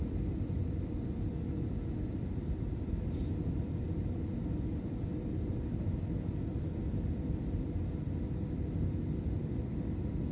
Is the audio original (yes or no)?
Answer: yes